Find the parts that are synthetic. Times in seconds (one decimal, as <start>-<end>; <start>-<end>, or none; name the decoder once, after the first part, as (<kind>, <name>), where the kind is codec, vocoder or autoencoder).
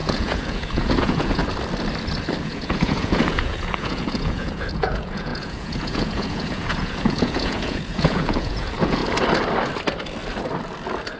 0.0-1.4 (vocoder, Vocos); 2.4-9.0